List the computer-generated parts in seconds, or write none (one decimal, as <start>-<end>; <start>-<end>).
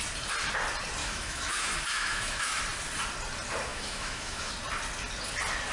1.0-2.6; 3.7-4.5